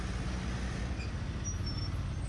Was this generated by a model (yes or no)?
no